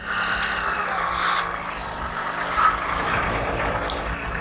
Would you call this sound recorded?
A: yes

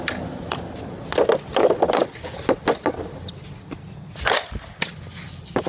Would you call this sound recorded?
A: yes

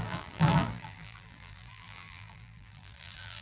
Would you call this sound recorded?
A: no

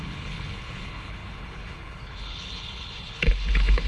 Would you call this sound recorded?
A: no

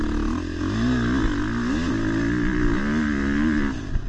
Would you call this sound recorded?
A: yes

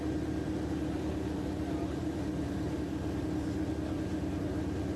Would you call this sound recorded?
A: yes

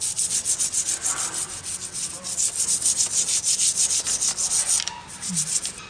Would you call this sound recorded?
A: yes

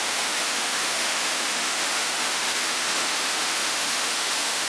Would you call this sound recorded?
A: no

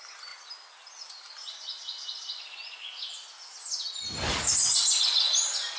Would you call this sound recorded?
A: yes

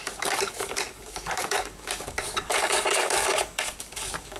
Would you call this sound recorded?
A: no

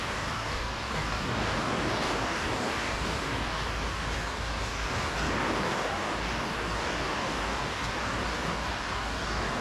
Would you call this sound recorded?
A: no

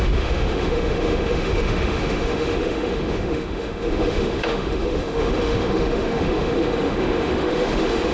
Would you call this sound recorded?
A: no